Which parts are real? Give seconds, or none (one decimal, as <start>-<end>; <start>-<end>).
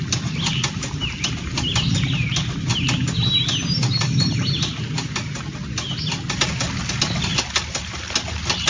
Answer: 0.0-8.7